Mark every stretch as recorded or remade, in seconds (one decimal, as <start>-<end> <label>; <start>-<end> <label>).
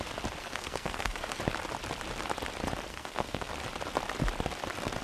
0.0-0.4 recorded; 0.4-1.4 remade; 1.4-2.9 recorded; 2.9-3.5 remade; 3.5-5.0 recorded